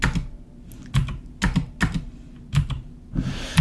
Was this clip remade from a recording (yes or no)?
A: no